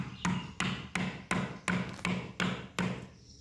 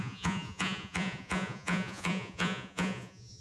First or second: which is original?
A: first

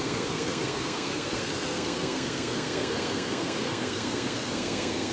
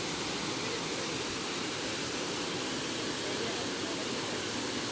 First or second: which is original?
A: second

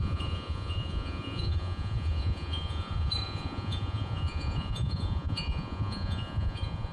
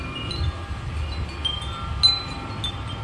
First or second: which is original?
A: second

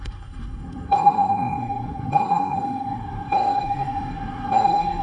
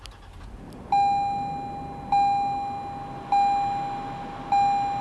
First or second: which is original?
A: second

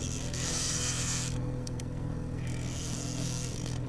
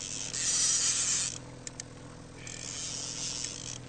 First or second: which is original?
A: second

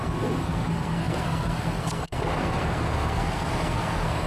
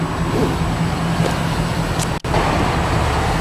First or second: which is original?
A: second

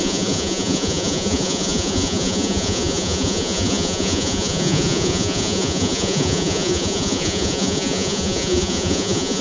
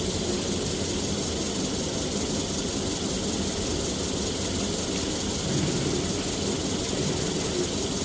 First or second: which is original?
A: second